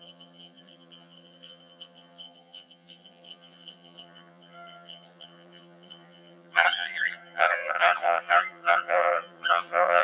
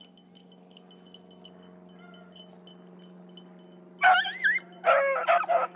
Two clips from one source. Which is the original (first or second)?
second